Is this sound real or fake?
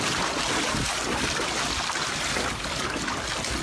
real